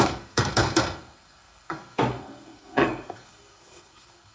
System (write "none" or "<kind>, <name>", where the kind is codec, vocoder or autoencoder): codec, SNAC